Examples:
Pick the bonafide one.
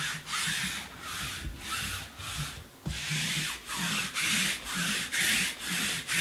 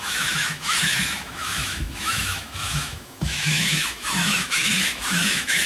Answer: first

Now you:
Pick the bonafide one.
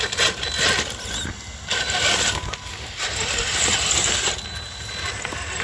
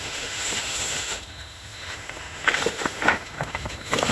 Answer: first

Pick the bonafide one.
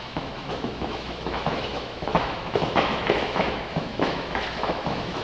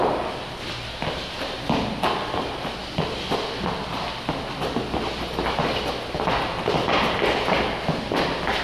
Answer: second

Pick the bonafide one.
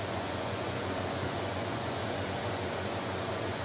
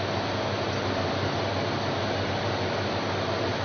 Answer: second